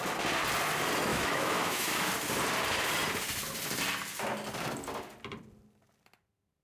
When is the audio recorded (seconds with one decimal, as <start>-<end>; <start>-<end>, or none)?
0.0-1.1; 2.1-6.6